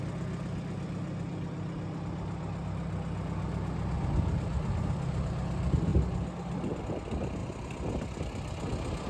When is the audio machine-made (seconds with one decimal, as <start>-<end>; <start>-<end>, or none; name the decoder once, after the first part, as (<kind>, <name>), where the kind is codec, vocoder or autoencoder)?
none